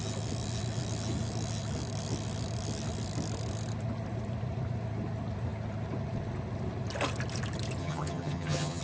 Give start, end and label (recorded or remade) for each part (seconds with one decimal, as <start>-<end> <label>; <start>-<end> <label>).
0.0-7.8 recorded; 7.8-8.8 remade